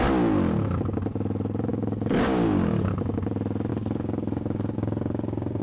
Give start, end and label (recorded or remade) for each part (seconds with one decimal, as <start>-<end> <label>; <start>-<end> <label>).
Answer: 0.0-1.7 recorded; 1.7-2.9 remade; 2.9-3.7 recorded; 3.7-5.6 remade